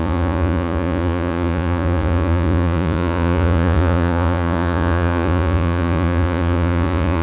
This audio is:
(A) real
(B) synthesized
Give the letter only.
B